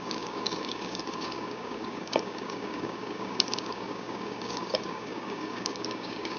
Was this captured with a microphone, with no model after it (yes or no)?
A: no